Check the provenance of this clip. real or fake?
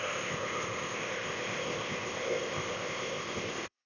fake